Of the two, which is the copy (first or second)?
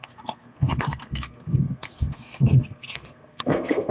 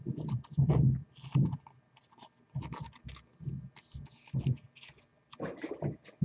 first